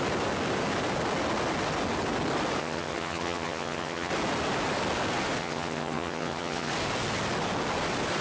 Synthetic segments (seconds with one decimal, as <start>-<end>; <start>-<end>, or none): 2.6-4.1; 5.4-6.7